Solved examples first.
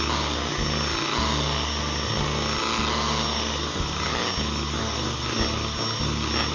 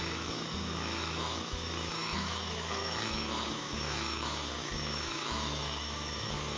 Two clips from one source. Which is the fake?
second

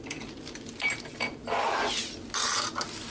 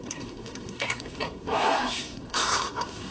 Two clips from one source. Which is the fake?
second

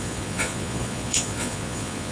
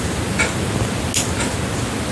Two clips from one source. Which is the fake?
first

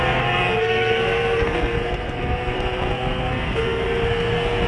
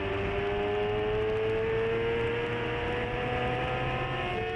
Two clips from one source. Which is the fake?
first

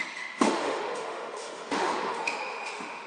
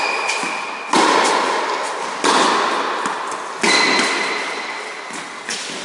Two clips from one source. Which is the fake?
first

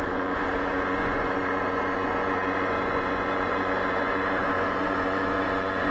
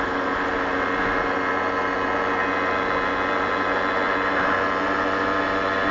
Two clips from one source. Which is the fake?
first